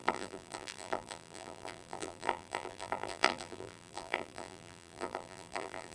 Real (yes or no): no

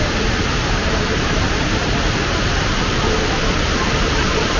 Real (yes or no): no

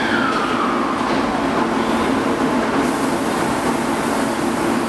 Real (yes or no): yes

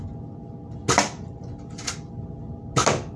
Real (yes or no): yes